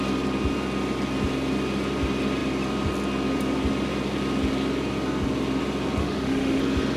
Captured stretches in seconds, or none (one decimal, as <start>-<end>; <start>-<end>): 0.0-6.0; 6.6-7.0

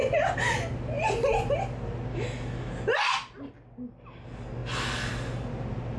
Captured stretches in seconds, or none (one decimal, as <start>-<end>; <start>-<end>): 0.0-2.1; 2.7-6.0

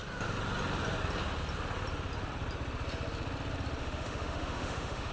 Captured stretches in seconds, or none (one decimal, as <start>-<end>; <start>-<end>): 0.0-3.8

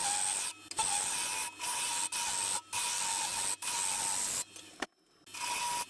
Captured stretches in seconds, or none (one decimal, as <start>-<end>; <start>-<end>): 0.0-5.9

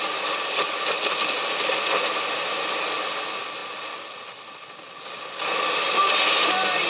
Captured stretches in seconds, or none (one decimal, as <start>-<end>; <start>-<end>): 0.0-6.9

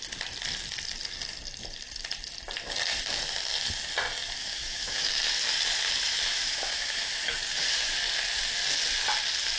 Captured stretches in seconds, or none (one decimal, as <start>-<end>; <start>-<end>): 0.0-4.4; 5.3-6.3; 7.3-9.6

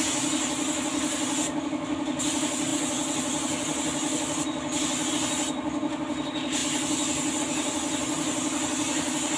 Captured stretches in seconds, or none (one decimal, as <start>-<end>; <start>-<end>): 0.0-9.4